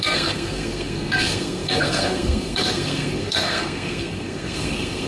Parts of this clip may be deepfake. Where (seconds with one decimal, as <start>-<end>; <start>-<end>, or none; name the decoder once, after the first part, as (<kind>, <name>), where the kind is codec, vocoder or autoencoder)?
0.0-5.1 (codec, SNAC)